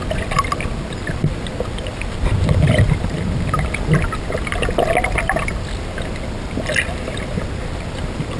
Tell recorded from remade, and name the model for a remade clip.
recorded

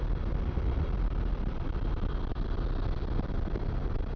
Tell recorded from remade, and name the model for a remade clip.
recorded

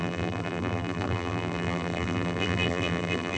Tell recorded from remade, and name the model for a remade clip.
remade, vocoder, BigVGAN v2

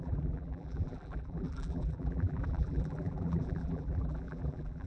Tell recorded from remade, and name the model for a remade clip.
remade, vocoder, BigVGAN v2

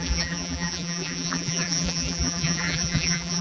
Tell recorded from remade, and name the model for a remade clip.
remade, vocoder, BigVGAN v2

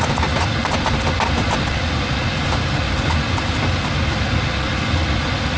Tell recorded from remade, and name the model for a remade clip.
recorded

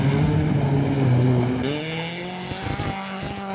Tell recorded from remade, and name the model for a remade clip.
recorded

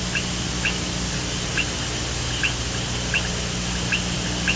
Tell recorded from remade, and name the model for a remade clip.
recorded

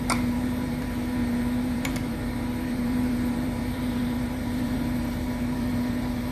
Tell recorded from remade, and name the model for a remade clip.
remade, vocoder, BigVGAN v2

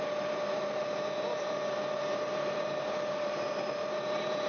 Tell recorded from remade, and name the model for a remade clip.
remade, vocoder, BigVGAN v2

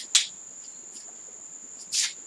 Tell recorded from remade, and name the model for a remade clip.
recorded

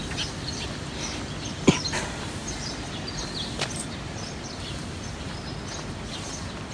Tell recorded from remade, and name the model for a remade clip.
recorded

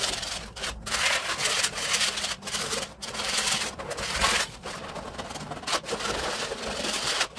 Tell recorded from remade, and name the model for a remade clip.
remade, vocoder, BigVGAN v2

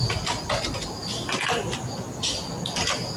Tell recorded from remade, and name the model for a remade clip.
recorded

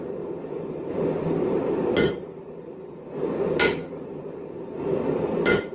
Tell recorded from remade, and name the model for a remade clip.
remade, vocoder, BigVGAN v2